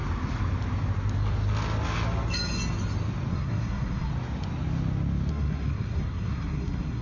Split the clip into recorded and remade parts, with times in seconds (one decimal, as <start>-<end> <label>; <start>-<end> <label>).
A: 0.0-3.3 recorded; 3.3-4.1 remade; 4.1-5.3 recorded; 5.3-7.0 remade